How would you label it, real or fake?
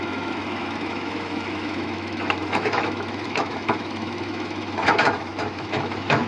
fake